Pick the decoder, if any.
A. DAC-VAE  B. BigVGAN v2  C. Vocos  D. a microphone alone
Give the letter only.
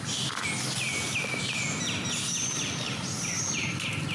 D